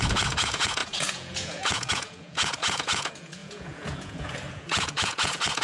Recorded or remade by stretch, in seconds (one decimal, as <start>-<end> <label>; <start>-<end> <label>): 0.0-5.6 remade